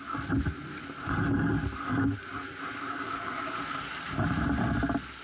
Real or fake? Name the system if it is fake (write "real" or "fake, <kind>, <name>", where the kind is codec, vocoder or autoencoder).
real